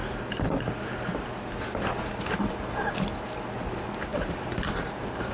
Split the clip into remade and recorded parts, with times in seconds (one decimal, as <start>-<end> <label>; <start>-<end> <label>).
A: 0.0-5.3 recorded